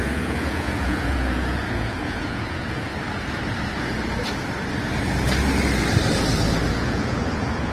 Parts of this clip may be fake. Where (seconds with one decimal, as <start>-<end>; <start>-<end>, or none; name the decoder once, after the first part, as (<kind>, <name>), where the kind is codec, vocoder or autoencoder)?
0.0-2.9 (vocoder, Vocos); 6.7-7.7